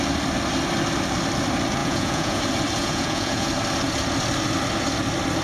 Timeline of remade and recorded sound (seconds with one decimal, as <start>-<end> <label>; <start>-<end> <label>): 0.0-1.8 recorded; 1.8-2.4 remade; 2.4-2.8 recorded; 2.8-3.5 remade; 3.5-5.4 recorded